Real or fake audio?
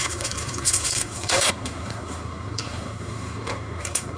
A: fake